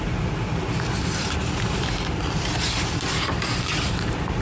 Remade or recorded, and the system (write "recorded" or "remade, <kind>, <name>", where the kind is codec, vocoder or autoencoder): remade, vocoder, BigVGAN v2